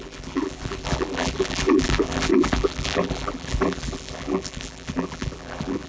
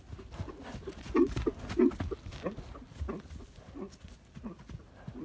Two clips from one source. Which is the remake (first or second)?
first